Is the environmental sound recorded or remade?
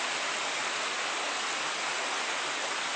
recorded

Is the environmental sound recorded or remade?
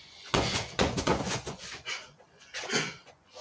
remade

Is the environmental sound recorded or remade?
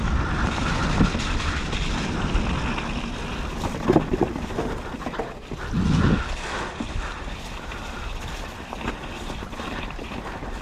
recorded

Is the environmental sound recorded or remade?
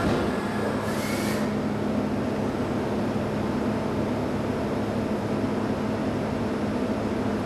recorded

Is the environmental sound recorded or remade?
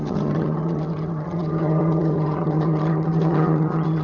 remade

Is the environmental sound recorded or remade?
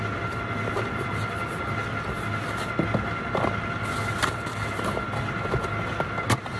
recorded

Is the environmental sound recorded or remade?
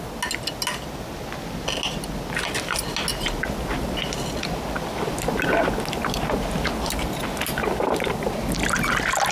recorded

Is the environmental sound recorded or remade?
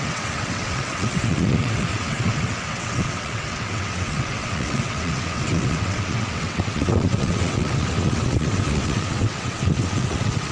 remade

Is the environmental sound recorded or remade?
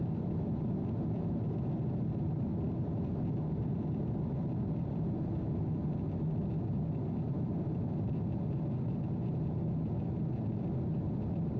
recorded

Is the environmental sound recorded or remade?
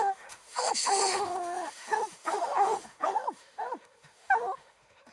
remade